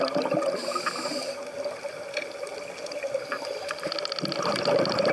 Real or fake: real